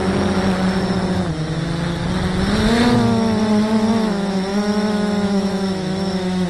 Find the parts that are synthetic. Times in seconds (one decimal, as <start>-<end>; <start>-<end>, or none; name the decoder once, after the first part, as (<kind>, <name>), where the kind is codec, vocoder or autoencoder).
3.9-6.5 (autoencoder, DAC-VAE)